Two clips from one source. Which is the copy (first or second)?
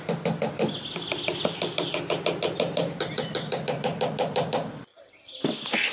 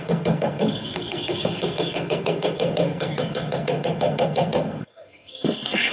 second